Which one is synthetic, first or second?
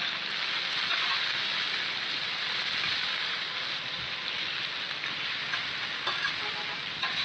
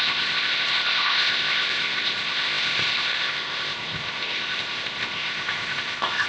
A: second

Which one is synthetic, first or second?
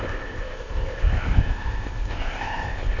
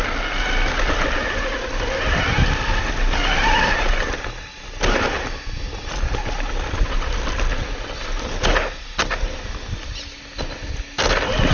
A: first